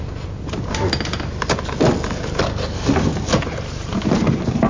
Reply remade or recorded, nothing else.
recorded